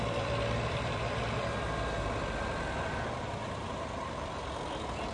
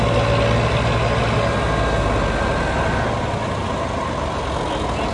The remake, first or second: first